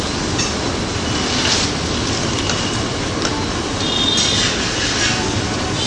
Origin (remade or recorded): recorded